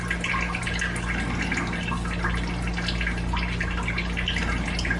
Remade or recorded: recorded